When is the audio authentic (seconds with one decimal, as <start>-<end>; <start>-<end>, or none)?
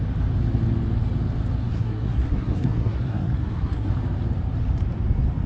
0.0-1.6; 3.9-5.5